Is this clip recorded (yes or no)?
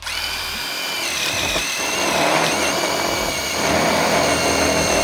no